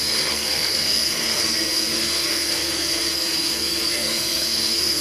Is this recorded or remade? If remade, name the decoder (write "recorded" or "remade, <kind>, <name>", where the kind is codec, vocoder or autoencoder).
remade, codec, SNAC